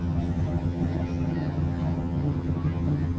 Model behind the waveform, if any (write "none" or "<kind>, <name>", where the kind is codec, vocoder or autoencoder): vocoder, HiFi-GAN